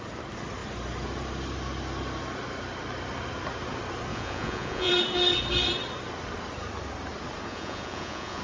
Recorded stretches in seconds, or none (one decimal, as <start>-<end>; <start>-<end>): 0.0-4.1; 4.9-7.5